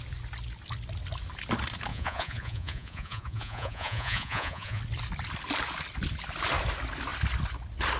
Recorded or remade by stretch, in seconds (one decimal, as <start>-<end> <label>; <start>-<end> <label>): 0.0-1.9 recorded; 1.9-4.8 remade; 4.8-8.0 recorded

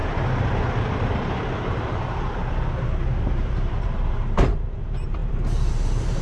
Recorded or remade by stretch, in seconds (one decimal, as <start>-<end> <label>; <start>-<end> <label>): 0.0-1.6 recorded; 1.6-6.2 remade

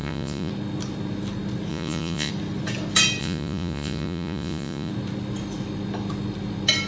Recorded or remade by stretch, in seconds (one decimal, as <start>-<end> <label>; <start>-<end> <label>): 0.0-0.5 remade; 0.5-1.7 recorded; 1.7-2.3 remade; 2.3-3.2 recorded; 3.2-4.9 remade; 4.9-6.9 recorded

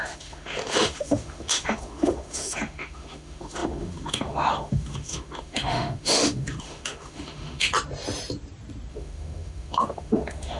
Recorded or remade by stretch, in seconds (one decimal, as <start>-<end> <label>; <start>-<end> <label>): 0.0-7.7 remade; 7.7-8.9 recorded; 8.9-10.6 remade